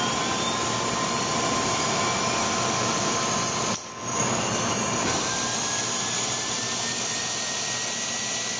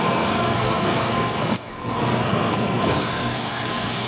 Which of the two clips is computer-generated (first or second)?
second